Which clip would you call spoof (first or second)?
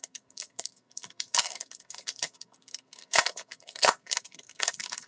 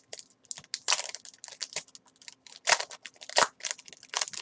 first